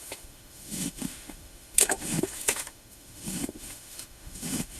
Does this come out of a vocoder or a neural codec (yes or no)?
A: yes